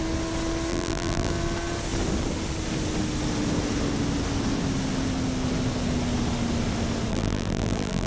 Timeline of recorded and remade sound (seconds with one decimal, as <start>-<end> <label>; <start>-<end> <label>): 0.0-0.7 recorded; 0.7-1.3 remade; 1.3-7.1 recorded; 7.1-8.1 remade